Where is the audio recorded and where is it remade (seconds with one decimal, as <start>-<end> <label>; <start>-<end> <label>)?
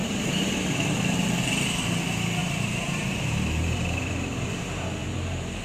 0.0-0.6 remade; 0.6-2.4 recorded; 2.4-4.6 remade; 4.6-5.0 recorded; 5.0-5.6 remade